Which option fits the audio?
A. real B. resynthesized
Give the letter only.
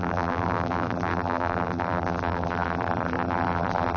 B